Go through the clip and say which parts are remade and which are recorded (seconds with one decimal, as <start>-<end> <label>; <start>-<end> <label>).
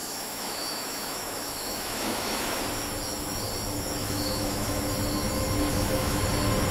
0.0-2.6 remade; 2.6-4.0 recorded; 4.0-4.8 remade; 4.8-5.7 recorded; 5.7-6.2 remade; 6.2-6.7 recorded